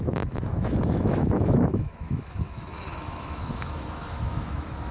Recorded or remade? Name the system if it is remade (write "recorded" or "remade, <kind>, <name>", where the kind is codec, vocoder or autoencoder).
remade, autoencoder, DAC-VAE